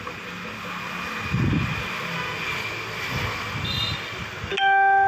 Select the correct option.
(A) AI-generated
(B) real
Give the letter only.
B